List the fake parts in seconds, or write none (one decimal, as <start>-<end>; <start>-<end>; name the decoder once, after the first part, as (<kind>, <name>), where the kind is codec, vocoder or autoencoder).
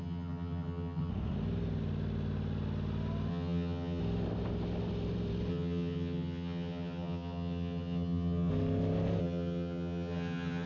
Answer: 0.0-1.1 (vocoder, HiFi-GAN); 3.3-4.0; 5.5-8.5; 9.2-10.7